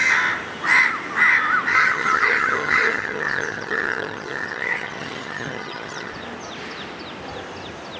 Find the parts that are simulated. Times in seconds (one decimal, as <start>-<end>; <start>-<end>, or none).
1.7-6.1